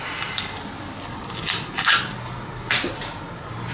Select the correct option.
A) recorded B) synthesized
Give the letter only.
A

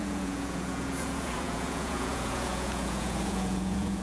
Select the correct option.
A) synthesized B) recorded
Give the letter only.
A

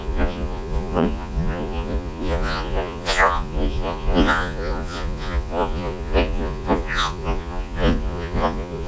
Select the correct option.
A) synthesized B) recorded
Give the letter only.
A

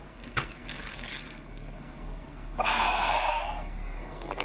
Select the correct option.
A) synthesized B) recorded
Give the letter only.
A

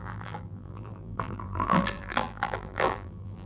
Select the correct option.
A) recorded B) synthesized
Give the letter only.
B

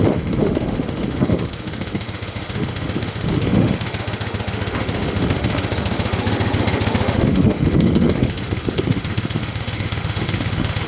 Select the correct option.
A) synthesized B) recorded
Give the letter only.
A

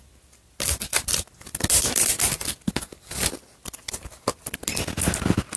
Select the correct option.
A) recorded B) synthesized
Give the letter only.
A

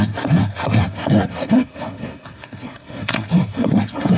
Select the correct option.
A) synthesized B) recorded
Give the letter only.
A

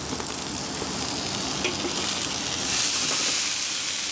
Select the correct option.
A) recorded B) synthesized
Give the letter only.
A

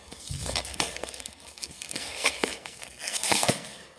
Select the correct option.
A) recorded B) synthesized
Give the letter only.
B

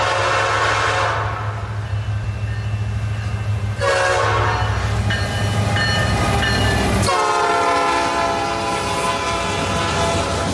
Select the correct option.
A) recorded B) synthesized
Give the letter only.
A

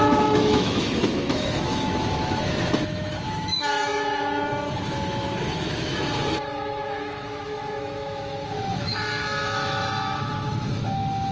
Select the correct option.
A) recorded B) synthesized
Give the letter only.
B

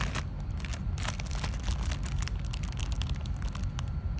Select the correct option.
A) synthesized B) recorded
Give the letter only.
B